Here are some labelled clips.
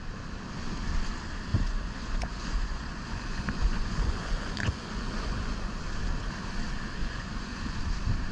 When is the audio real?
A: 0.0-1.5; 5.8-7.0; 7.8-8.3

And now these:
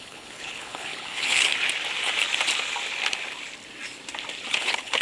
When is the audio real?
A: 1.5-4.5

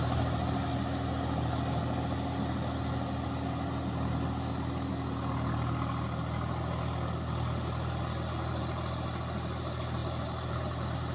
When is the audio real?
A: 0.0-11.1

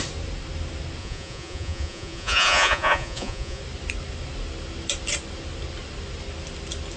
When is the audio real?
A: 0.0-1.0; 3.6-7.0

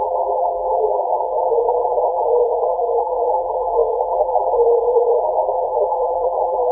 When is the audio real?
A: none